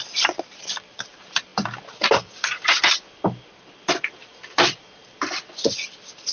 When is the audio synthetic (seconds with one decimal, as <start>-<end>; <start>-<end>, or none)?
none